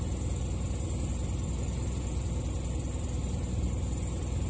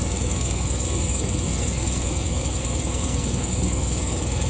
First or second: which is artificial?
second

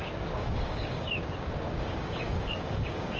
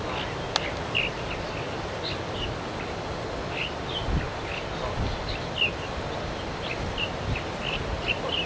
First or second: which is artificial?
first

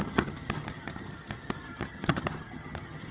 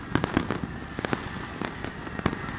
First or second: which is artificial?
first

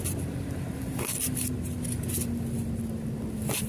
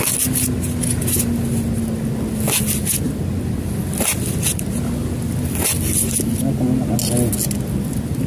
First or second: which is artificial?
first